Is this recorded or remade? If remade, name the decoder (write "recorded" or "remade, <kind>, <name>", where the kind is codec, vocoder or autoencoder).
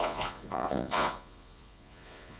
remade, vocoder, Vocos